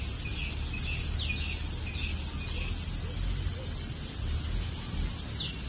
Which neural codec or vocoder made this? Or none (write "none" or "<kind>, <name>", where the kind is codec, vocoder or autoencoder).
none